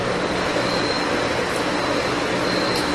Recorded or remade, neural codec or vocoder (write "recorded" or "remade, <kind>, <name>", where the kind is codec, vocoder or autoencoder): recorded